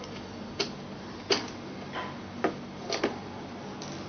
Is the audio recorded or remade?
recorded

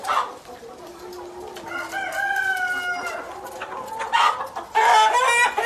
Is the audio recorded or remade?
recorded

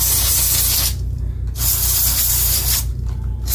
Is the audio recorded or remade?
recorded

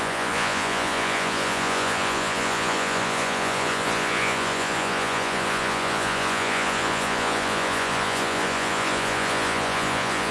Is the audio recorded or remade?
remade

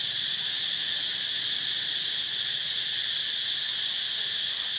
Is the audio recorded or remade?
recorded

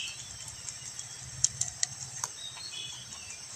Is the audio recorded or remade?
recorded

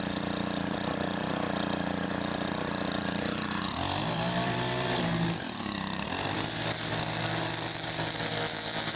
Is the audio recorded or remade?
remade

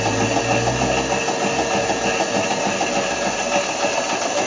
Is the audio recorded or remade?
recorded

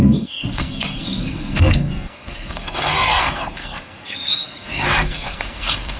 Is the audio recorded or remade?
remade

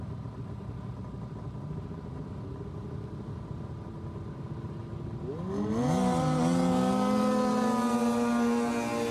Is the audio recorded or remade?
recorded